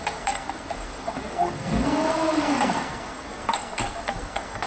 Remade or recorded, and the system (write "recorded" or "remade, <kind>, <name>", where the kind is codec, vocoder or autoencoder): remade, codec, SNAC